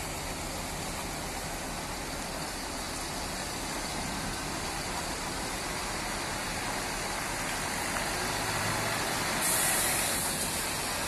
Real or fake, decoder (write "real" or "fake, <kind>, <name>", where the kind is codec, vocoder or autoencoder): real